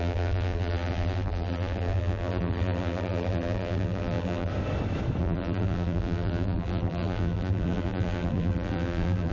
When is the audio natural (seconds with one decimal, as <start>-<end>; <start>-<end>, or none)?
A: 4.5-5.2